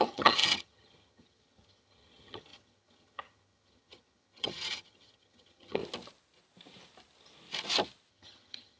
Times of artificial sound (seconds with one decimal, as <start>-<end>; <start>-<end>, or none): 0.0-5.8; 8.1-8.8